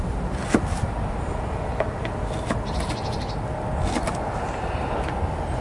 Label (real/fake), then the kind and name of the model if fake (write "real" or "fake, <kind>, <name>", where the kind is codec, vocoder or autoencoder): real